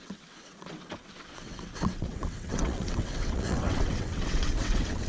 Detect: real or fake fake